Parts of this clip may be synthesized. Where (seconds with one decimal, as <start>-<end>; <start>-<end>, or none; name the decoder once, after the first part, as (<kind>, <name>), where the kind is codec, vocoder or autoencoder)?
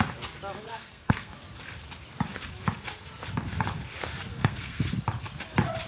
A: 0.6-1.3 (codec, SNAC); 4.3-4.9